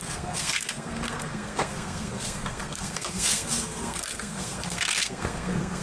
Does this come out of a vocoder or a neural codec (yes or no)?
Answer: yes